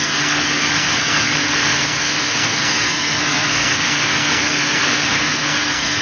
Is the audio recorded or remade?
remade